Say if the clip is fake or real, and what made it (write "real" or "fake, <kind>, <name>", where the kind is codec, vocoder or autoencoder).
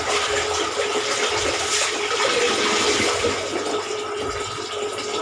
real